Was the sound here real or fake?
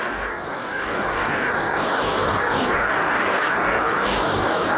fake